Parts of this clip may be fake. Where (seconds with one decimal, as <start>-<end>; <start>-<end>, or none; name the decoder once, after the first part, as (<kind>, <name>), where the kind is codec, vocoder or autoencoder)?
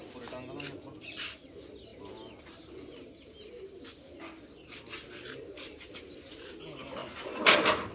none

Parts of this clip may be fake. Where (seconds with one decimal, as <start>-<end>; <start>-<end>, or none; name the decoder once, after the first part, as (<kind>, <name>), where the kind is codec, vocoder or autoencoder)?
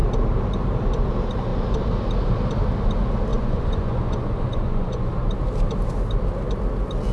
3.3-5.1 (vocoder, Vocos)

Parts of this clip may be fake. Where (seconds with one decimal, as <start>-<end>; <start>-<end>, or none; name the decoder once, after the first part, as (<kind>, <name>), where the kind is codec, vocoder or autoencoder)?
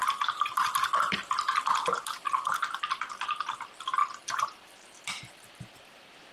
0.0-0.9 (vocoder, BigVGAN v2)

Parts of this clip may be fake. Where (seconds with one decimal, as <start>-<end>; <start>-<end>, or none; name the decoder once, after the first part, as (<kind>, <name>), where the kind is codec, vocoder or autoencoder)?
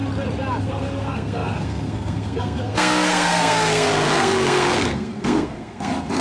0.6-6.2 (codec, SNAC)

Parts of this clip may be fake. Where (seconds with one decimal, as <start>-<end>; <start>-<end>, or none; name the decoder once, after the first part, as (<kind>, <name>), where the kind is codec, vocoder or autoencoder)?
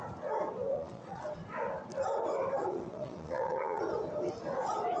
0.7-1.2 (vocoder, WaveNeXt); 2.6-3.8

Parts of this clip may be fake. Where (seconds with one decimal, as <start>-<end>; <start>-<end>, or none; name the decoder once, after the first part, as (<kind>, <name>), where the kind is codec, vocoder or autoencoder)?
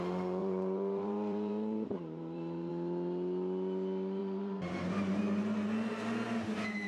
0.4-2.7 (vocoder, BigVGAN v2); 4.2-5.2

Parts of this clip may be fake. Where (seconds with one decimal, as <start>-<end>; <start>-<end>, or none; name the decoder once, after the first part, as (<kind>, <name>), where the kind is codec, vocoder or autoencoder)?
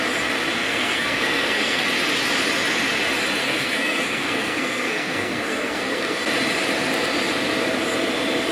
0.6-1.8 (codec, SNAC); 3.4-6.2